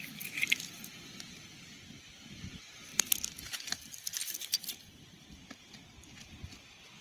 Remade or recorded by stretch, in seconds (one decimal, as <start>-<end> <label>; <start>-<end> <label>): 0.0-4.2 recorded; 4.2-5.6 remade; 5.6-7.0 recorded